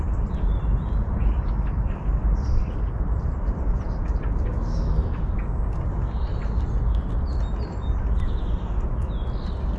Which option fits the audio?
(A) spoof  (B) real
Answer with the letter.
B